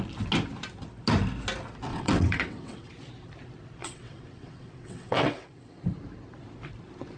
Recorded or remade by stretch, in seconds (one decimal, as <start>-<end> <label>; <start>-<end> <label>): 0.0-1.9 recorded; 1.9-2.9 remade; 2.9-3.8 recorded; 3.8-5.8 remade; 5.8-7.2 recorded